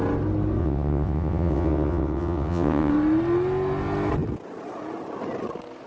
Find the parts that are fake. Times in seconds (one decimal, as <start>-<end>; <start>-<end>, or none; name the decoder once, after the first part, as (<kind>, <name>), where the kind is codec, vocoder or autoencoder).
0.6-2.9 (vocoder, WaveNeXt)